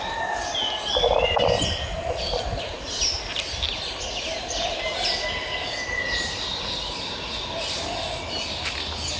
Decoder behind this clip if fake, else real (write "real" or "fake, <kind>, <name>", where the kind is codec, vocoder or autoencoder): real